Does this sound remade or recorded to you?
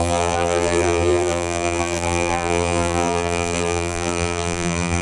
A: remade